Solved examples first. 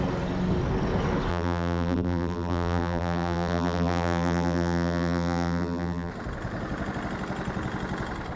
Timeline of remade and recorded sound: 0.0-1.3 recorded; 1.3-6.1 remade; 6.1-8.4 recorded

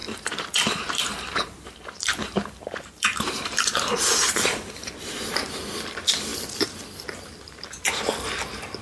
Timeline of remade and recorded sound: 0.0-4.9 remade; 4.9-8.8 recorded

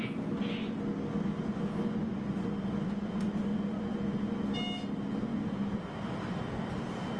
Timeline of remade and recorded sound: 0.0-2.1 recorded; 2.1-3.8 remade; 3.8-7.2 recorded

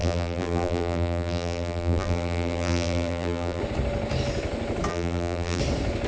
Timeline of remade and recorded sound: 0.0-3.6 remade; 3.6-4.9 recorded; 4.9-5.6 remade; 5.6-6.1 recorded

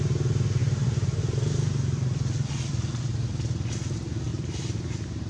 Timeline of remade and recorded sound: 0.0-4.3 recorded; 4.3-5.3 remade

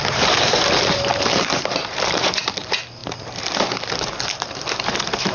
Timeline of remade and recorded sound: 0.0-5.3 remade

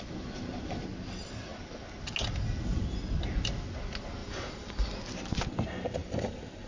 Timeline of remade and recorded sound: 0.0-4.2 recorded; 4.2-5.0 remade; 5.0-6.0 recorded; 6.0-6.7 remade

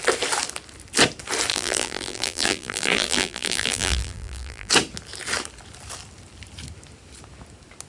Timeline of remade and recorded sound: 0.0-1.5 recorded; 1.5-4.7 remade; 4.7-7.9 recorded